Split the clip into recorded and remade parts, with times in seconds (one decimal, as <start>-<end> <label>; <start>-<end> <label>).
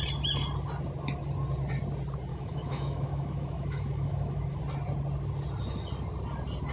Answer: 0.0-2.3 recorded; 2.3-4.6 remade; 4.6-6.7 recorded